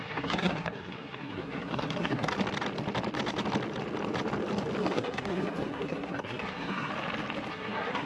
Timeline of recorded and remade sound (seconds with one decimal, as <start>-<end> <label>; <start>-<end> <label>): 0.0-2.3 remade; 2.3-4.8 recorded; 4.8-6.9 remade; 6.9-7.5 recorded; 7.5-8.1 remade